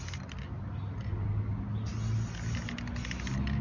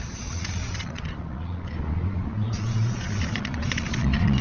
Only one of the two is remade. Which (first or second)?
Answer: second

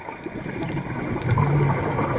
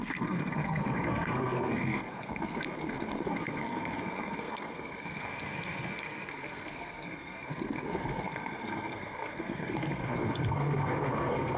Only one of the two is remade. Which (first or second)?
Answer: second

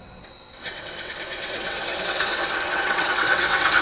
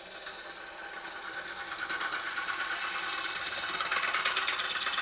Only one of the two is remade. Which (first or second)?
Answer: first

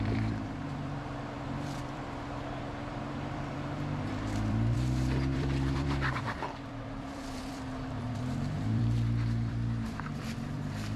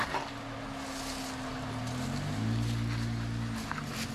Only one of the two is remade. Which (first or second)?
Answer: first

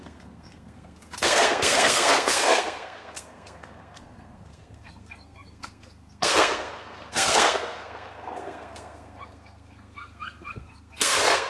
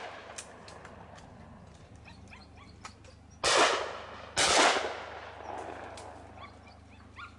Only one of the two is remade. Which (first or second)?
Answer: first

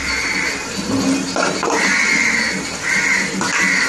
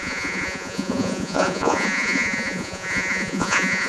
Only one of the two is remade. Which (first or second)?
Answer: second